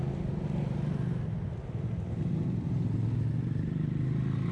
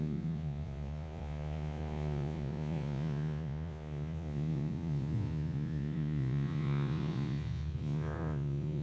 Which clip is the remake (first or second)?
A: second